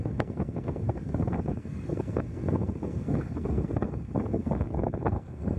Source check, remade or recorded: remade